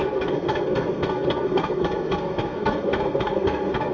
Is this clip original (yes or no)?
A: no